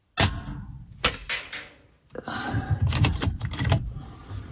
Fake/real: real